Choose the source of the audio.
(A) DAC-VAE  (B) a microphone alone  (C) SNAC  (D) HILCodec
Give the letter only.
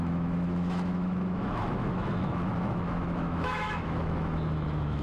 A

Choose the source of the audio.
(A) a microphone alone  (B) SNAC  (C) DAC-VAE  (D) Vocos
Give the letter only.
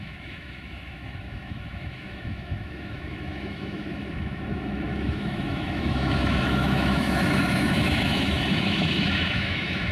C